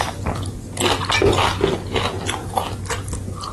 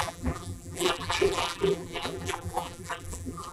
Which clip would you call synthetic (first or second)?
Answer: second